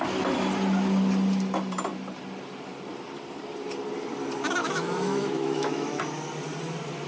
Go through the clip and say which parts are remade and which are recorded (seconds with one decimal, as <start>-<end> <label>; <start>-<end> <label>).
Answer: 0.0-4.6 recorded; 4.6-6.0 remade; 6.0-7.1 recorded